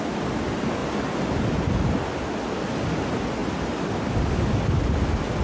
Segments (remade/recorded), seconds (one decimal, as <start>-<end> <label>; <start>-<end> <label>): 0.0-3.4 recorded; 3.4-5.4 remade